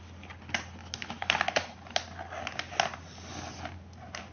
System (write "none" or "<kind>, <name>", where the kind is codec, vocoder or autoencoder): none